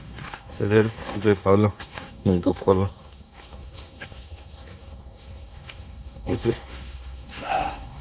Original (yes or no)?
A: no